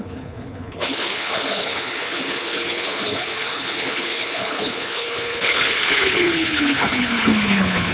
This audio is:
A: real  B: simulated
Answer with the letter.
B